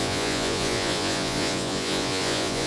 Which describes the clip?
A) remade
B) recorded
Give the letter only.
A